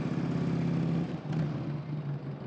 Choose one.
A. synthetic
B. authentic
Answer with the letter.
B